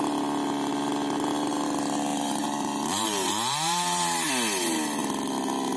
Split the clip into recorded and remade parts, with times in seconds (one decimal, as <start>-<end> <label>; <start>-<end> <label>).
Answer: 0.0-2.1 recorded; 2.1-4.3 remade; 4.3-5.8 recorded